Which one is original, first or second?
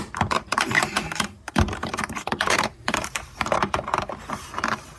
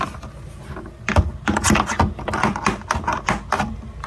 second